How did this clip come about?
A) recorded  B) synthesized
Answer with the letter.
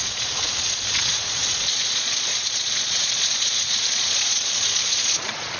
B